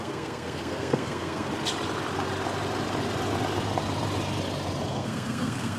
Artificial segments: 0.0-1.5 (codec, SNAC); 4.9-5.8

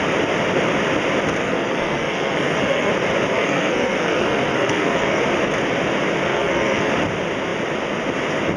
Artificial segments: 1.4-2.9 (codec, SNAC); 3.3-5.2; 6.2-6.9